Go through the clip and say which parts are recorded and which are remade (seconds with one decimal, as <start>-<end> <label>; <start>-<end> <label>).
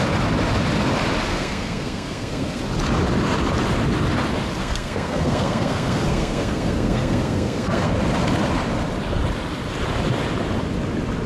0.0-1.3 recorded; 1.3-2.6 remade; 2.6-4.6 recorded; 4.6-7.9 remade; 7.9-11.3 recorded